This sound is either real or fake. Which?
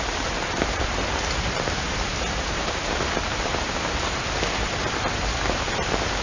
fake